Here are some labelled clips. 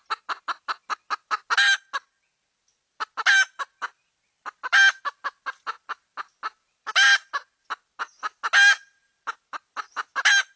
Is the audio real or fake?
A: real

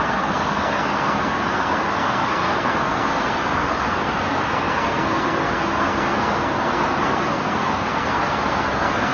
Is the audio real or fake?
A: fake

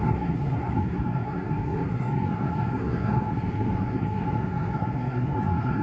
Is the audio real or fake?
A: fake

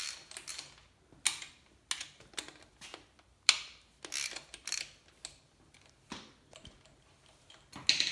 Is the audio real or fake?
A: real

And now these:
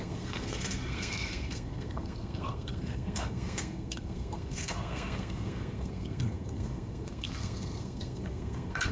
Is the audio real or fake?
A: fake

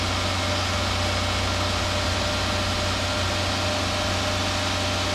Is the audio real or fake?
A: real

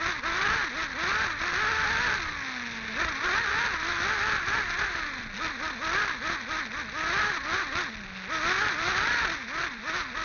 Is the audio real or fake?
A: real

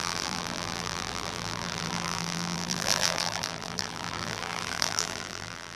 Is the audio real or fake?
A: fake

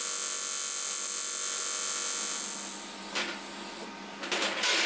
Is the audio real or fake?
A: real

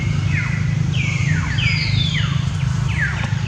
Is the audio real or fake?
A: fake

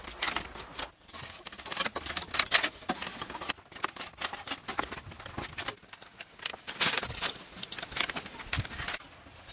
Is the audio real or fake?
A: real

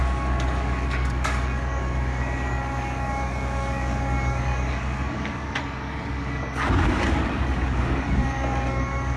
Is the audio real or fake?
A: fake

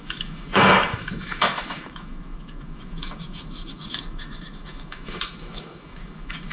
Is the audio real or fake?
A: fake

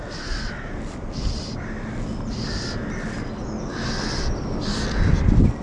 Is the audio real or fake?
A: real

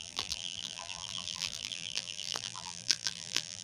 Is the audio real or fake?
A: fake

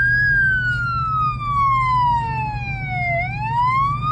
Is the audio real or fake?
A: real